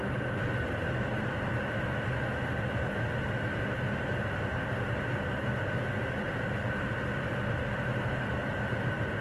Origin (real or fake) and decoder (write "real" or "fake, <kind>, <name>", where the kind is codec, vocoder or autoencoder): real